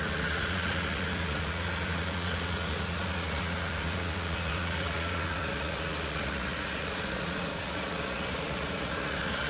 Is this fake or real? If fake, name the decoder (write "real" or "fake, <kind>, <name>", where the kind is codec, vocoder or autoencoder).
fake, vocoder, Vocos